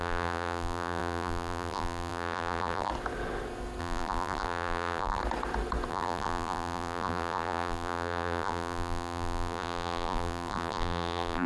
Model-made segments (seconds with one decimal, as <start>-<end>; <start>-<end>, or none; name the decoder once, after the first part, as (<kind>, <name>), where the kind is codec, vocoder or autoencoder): 0.0-2.9 (vocoder, BigVGAN v2); 3.8-5.2; 5.9-11.5